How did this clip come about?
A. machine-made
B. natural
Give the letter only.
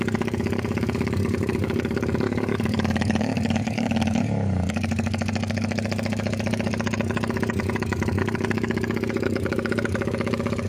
A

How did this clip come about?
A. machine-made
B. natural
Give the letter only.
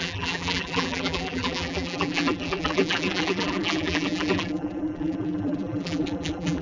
A